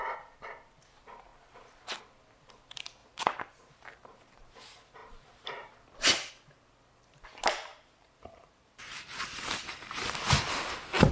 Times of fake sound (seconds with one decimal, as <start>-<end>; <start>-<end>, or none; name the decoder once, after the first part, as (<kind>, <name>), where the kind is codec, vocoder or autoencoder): 3.0-4.6 (vocoder, BigVGAN v2); 7.7-10.1